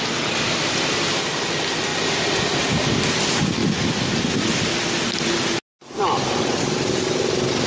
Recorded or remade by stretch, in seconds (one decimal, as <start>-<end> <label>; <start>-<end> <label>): 0.0-7.7 recorded